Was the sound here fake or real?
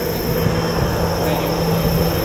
real